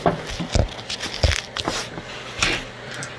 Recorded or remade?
recorded